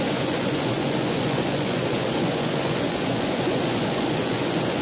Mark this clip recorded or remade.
remade